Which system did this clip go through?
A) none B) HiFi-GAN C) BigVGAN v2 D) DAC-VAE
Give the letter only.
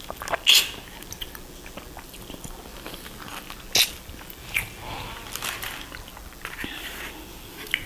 A